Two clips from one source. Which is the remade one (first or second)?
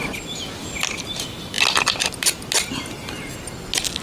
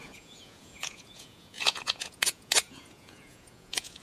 second